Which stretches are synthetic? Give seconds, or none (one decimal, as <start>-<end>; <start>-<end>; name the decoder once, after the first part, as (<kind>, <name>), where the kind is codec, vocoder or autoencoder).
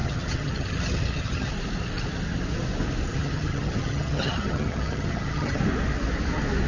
0.0-1.5 (vocoder, HiFi-GAN); 3.1-5.6